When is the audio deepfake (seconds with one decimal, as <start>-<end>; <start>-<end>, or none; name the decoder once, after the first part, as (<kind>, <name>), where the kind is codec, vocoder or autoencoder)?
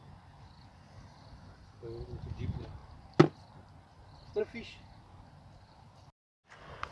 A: none